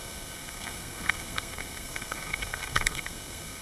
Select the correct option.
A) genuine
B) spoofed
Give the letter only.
B